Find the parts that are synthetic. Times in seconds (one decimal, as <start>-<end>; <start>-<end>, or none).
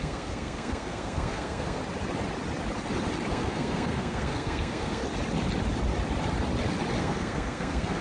0.0-1.8; 3.3-5.0; 7.0-8.0